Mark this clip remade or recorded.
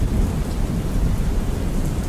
remade